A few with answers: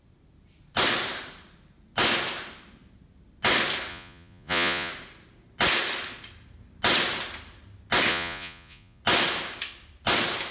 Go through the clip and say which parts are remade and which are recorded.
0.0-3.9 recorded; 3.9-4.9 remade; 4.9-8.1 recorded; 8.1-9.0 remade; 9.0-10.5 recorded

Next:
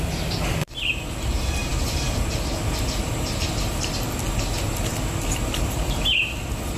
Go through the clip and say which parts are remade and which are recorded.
0.0-6.8 recorded

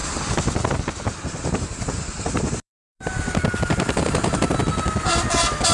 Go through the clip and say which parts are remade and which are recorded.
0.0-1.4 recorded; 1.4-4.6 remade; 4.6-5.7 recorded

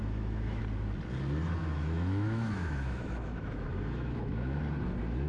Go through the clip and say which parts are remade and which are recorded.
0.0-0.6 remade; 0.6-1.6 recorded; 1.6-4.6 remade; 4.6-5.3 recorded